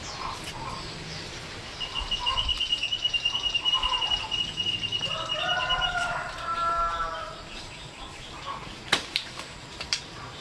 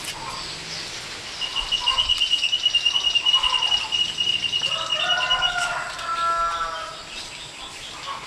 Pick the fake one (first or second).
first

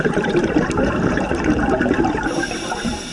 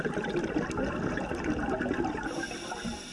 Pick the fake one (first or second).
first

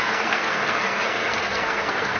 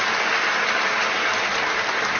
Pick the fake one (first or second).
first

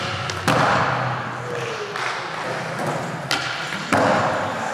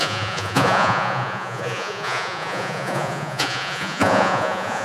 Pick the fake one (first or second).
second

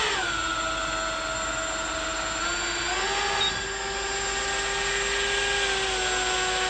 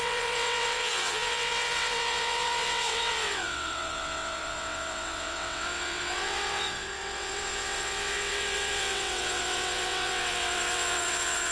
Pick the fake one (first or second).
second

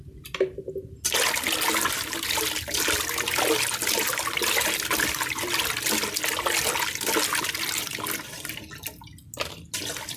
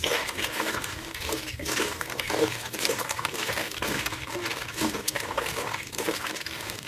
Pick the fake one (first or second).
second